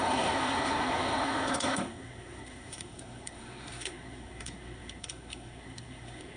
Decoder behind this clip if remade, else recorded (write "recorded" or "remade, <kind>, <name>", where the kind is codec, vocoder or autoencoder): remade, codec, SNAC